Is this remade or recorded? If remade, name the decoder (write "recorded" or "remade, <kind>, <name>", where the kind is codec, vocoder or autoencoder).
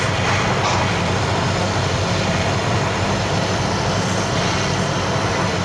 recorded